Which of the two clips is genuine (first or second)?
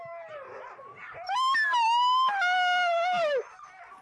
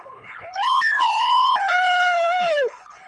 first